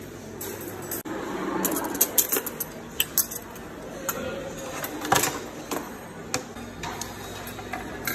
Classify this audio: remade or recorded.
recorded